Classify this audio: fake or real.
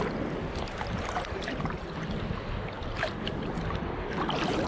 real